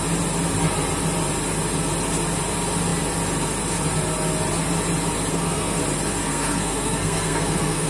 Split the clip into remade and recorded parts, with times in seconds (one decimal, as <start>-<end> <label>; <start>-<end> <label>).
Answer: 0.0-5.3 recorded; 5.3-5.8 remade; 5.8-6.2 recorded; 6.2-7.9 remade